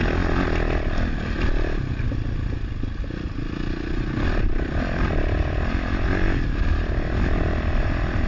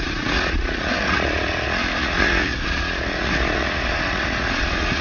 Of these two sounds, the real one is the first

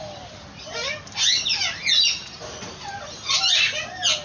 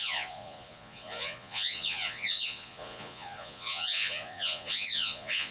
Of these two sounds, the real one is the first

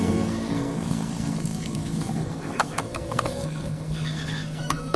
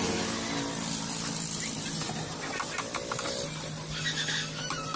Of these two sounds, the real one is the second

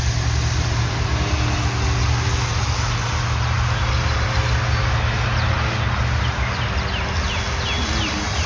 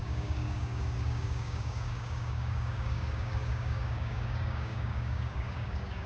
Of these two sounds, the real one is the first